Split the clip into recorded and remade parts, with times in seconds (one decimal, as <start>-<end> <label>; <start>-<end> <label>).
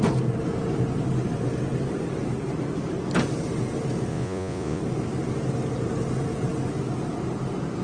0.0-4.1 recorded; 4.1-4.8 remade; 4.8-7.8 recorded